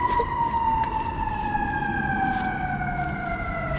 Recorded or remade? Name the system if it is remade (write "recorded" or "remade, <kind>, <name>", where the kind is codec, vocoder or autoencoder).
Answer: recorded